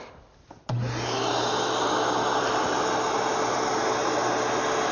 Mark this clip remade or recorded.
recorded